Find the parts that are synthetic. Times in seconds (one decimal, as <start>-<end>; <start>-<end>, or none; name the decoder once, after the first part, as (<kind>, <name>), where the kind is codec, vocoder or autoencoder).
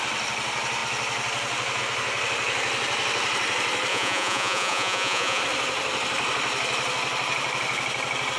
3.9-5.4 (vocoder, Vocos)